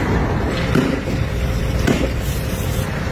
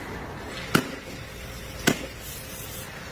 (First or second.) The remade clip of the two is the first